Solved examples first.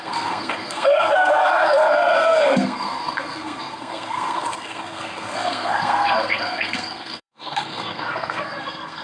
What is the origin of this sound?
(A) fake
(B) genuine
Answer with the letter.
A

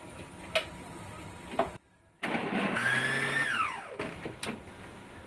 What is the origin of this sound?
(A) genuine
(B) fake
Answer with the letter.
A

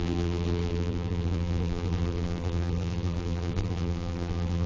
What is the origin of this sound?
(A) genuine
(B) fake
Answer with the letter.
B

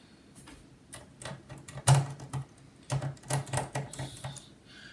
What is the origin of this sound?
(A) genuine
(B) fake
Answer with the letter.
A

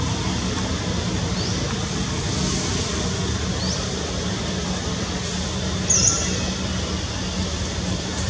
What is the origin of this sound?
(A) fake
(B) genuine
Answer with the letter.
B